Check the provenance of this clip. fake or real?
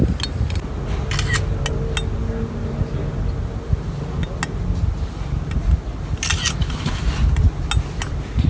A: real